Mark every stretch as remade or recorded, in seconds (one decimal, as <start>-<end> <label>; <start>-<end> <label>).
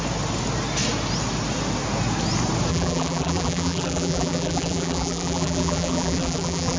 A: 0.0-2.7 recorded; 2.7-6.8 remade